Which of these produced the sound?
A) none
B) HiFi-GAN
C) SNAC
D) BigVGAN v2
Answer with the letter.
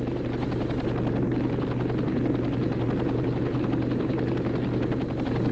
A